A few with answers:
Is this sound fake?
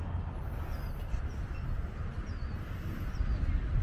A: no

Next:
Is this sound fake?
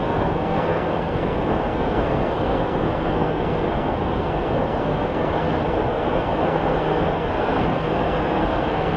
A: yes